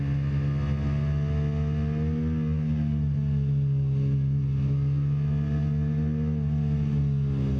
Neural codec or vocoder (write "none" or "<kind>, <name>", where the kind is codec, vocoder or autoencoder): none